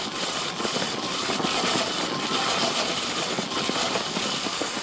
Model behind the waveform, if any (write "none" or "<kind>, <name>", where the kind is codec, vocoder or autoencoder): none